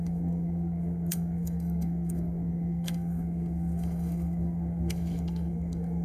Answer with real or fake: fake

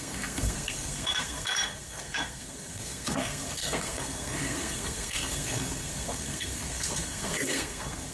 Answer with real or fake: fake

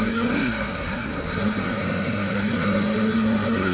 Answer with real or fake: fake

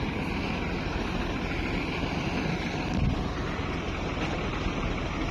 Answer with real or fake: real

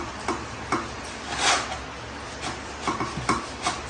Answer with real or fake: real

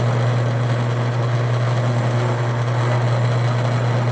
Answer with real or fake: real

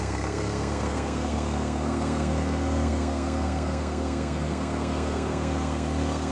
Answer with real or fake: fake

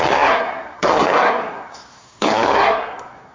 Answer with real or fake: fake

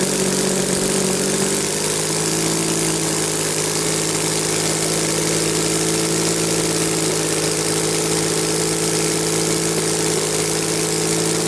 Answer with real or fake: real